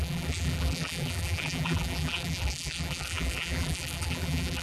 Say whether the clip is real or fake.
fake